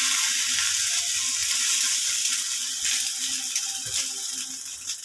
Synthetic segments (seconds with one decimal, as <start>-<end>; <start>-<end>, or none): none